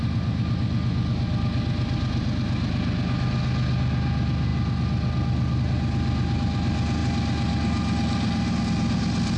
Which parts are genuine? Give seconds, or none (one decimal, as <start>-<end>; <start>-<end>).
0.0-9.4